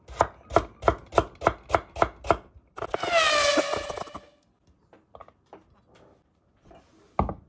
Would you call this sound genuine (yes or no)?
yes